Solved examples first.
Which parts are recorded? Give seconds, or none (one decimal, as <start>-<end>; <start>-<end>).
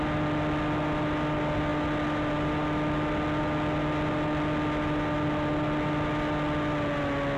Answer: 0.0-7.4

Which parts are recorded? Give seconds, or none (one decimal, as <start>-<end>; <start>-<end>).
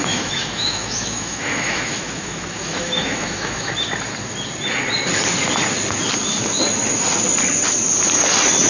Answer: 3.7-8.7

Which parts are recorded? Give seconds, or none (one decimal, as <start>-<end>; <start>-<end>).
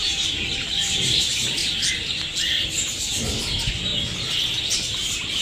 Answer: 1.6-2.9; 3.9-4.6